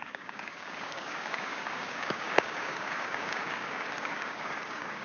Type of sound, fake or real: fake